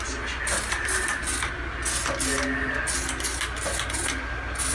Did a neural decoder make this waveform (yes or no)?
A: no